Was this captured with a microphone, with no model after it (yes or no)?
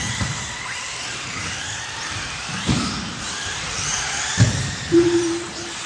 no